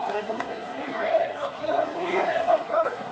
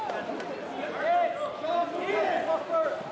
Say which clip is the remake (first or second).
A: first